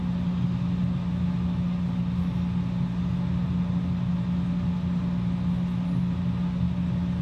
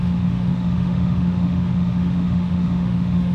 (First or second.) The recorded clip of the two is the first